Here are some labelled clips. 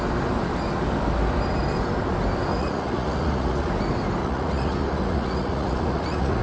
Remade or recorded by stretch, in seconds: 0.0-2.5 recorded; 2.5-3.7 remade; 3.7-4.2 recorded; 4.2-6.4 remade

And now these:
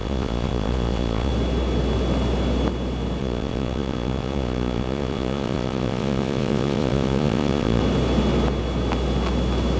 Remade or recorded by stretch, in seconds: 0.0-1.3 remade; 1.3-3.2 recorded; 3.2-7.8 remade; 7.8-9.8 recorded

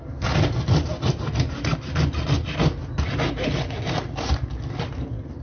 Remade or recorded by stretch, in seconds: 0.0-5.4 recorded

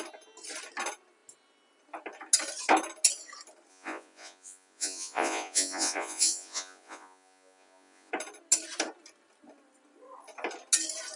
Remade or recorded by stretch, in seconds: 0.0-3.7 recorded; 3.7-8.1 remade; 8.1-11.2 recorded

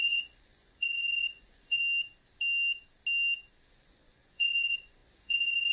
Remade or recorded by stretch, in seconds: 0.0-1.8 remade; 1.8-3.7 recorded; 3.7-5.7 remade

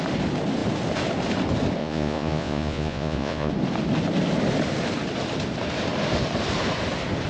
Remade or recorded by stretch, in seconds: 0.0-1.8 recorded; 1.8-3.5 remade; 3.5-7.3 recorded

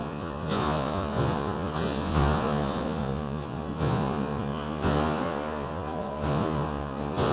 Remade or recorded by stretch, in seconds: 0.0-7.3 remade